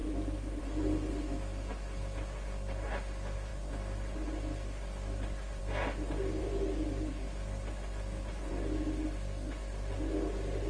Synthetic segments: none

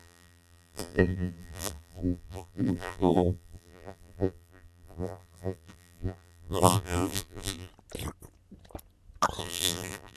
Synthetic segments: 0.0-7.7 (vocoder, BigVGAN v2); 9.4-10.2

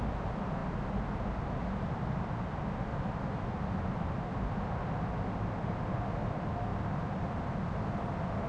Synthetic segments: 2.9-3.4 (vocoder, BigVGAN v2); 6.7-7.6

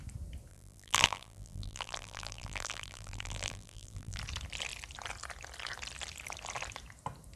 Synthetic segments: 0.5-4.2 (vocoder, BigVGAN v2)

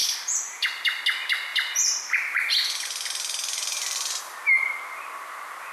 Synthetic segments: 0.0-1.0 (vocoder, BigVGAN v2); 1.5-4.2

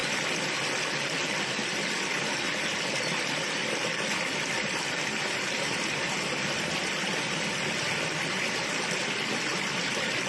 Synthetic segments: 1.9-10.3 (vocoder, BigVGAN v2)

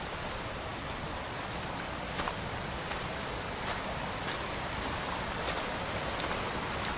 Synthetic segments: 0.0-0.7 (vocoder, BigVGAN v2); 2.3-7.0